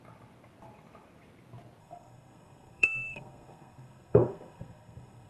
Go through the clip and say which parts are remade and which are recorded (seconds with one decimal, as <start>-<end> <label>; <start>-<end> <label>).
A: 0.0-1.8 recorded; 1.8-5.3 remade